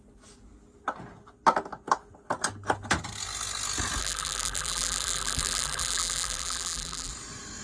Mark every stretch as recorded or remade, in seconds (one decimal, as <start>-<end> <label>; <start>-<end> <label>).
0.0-4.0 recorded; 4.0-7.1 remade; 7.1-7.6 recorded

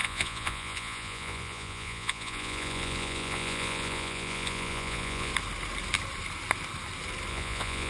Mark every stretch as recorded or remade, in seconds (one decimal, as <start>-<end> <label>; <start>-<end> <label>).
0.0-5.3 remade; 5.3-7.3 recorded; 7.3-7.9 remade

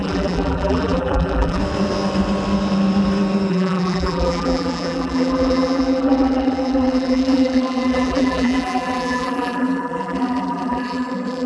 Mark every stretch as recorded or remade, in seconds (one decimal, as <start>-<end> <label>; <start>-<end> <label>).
0.0-1.6 remade; 1.6-3.5 recorded; 3.5-11.5 remade

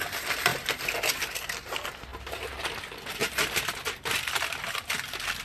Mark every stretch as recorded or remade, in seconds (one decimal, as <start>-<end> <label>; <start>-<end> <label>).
0.0-5.4 recorded

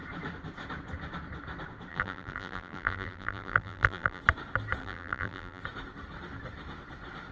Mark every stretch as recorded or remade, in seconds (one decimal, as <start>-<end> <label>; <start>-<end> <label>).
0.0-1.9 recorded; 1.9-4.2 remade; 4.2-4.8 recorded; 4.8-5.6 remade; 5.6-7.3 recorded

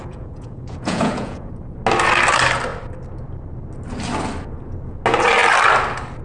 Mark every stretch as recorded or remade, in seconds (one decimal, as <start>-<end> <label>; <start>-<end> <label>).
0.0-1.5 remade; 1.5-6.2 recorded

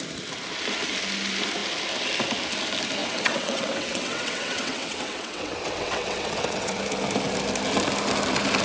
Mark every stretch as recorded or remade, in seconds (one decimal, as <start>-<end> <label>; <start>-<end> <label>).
0.0-3.0 recorded; 3.0-6.8 remade; 6.8-8.6 recorded